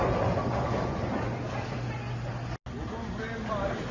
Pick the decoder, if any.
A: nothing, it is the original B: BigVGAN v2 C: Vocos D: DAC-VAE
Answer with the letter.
A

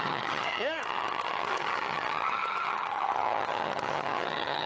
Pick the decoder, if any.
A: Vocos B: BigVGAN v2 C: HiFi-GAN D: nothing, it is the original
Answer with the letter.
C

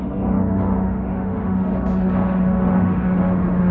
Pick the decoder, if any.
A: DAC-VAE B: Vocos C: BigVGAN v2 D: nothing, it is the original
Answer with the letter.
A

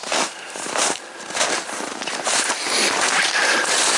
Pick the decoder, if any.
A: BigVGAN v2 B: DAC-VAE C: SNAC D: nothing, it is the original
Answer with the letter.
D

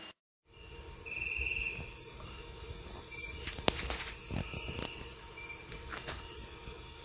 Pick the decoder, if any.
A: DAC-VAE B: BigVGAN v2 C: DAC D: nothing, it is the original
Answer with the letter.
D